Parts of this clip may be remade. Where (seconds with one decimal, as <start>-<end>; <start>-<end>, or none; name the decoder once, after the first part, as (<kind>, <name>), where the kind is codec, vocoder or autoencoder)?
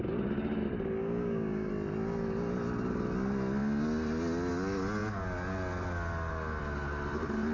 1.0-1.7 (codec, DAC)